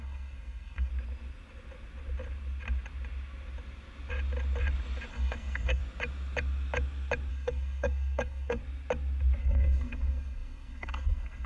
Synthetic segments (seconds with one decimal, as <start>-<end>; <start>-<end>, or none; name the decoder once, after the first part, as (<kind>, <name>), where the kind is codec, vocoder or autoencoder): 0.0-0.9 (codec, SNAC); 5.1-5.8; 7.3-8.6; 9.4-11.5